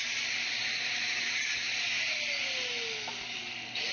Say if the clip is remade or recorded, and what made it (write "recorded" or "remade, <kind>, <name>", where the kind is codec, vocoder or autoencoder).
recorded